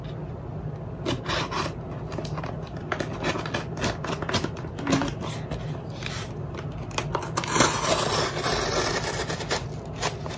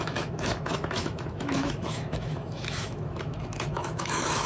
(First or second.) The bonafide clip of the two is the first